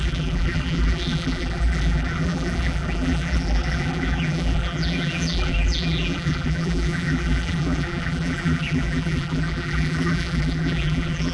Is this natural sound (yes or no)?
no